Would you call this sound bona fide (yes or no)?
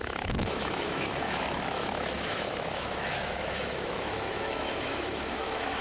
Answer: no